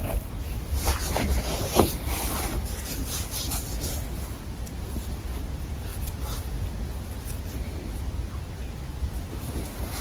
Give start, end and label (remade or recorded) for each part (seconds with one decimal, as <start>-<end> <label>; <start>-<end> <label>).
0.0-5.9 recorded; 5.9-6.5 remade; 6.5-8.6 recorded; 8.6-9.3 remade; 9.3-10.0 recorded